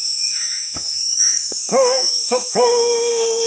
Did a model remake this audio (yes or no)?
yes